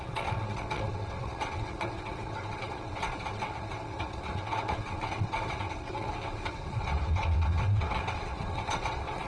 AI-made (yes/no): yes